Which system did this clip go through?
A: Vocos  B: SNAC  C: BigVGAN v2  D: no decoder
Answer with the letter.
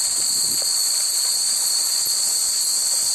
C